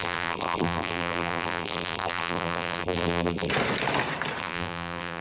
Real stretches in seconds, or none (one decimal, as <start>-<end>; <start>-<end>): 3.5-4.4